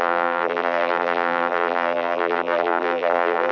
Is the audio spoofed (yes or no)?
yes